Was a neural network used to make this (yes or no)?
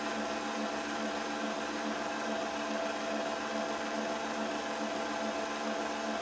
no